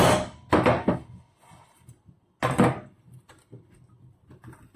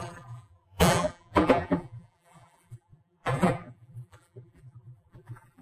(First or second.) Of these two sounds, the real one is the first